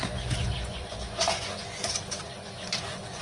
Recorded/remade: remade